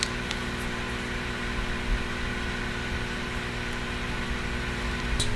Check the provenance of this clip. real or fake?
real